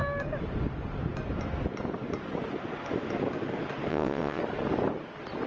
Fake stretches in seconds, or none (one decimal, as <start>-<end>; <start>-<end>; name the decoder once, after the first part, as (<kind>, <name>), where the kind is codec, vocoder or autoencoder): 3.9-4.4 (vocoder, WaveNeXt)